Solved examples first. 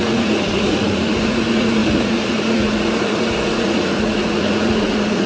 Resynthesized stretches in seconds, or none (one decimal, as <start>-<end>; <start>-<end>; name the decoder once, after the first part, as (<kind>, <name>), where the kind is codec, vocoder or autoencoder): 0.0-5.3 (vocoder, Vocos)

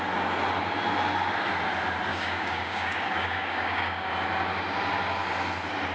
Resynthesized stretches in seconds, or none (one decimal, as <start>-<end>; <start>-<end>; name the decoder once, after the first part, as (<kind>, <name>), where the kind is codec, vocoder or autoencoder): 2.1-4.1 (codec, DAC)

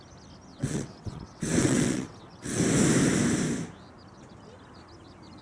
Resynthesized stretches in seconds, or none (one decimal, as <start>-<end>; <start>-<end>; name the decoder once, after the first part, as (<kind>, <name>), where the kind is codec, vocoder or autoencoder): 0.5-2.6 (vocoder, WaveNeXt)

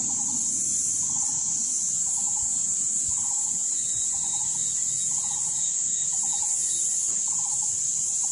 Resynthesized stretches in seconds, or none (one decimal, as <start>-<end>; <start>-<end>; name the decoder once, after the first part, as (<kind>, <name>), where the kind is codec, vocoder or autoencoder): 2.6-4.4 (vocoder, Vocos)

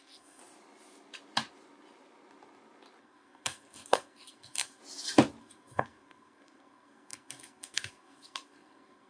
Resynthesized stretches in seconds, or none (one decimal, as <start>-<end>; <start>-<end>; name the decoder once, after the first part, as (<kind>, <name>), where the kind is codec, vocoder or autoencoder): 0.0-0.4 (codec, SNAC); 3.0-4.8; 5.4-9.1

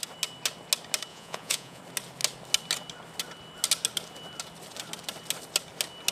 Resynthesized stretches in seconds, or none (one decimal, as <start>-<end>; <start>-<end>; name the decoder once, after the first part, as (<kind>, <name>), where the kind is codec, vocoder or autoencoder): 1.1-1.8 (vocoder, Vocos)

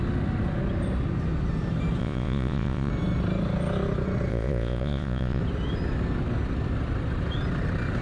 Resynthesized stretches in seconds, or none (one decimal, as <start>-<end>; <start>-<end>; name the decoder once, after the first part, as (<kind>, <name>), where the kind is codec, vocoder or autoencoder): 2.0-2.9 (vocoder, Vocos); 4.3-5.4